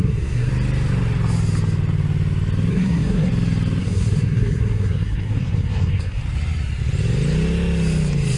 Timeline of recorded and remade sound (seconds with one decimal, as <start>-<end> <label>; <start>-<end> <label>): 0.0-0.5 remade; 0.5-2.7 recorded; 2.7-3.3 remade; 3.3-3.8 recorded; 3.8-6.2 remade; 6.2-8.4 recorded